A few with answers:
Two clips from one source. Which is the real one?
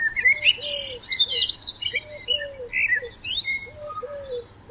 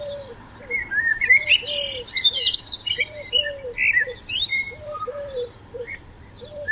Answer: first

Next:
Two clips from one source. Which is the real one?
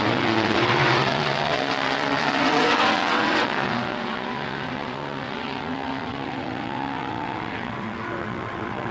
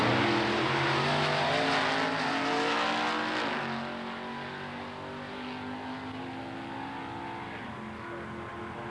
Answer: second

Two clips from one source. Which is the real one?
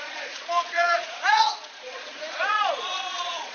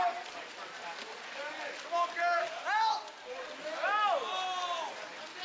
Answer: second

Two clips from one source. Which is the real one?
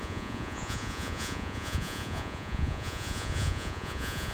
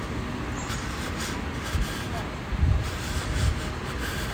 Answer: second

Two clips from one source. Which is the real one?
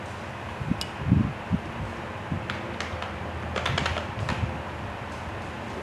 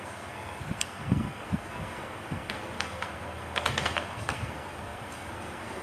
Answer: first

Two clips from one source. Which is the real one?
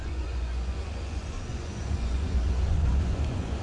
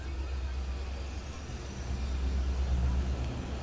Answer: second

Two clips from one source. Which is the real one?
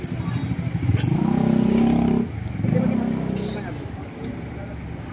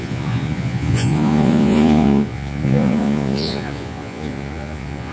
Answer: first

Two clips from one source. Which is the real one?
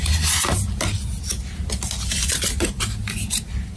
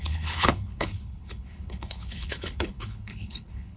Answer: first